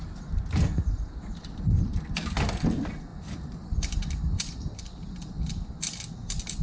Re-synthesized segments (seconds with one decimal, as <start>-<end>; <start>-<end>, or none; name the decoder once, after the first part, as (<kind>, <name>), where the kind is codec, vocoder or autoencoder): 3.1-3.8 (vocoder, BigVGAN v2)